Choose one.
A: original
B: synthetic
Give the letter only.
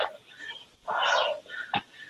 A